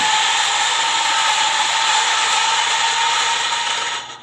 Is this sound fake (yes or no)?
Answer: no